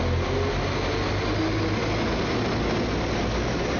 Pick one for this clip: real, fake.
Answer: real